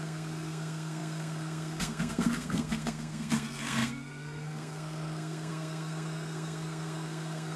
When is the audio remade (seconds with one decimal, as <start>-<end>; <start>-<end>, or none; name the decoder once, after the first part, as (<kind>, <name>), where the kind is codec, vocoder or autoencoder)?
0.0-7.6 (codec, SNAC)